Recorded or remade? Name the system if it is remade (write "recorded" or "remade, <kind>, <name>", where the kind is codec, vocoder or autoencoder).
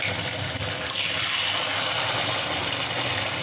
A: recorded